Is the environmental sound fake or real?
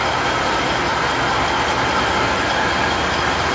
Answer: real